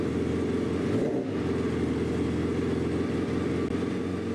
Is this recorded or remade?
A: recorded